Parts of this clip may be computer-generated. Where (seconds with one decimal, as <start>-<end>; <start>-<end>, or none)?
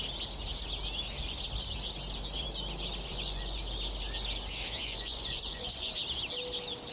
3.1-3.6; 4.8-5.9